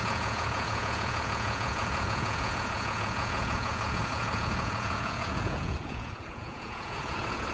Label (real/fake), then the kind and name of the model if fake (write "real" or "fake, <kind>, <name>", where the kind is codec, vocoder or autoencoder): fake, vocoder, Vocos